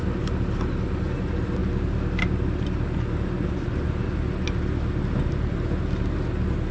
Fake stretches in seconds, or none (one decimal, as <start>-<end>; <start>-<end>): none